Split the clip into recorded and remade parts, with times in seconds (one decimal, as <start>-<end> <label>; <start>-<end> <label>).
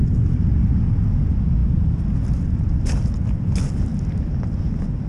0.0-5.1 recorded